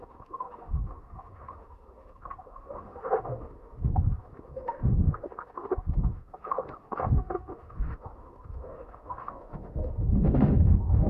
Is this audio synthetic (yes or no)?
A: yes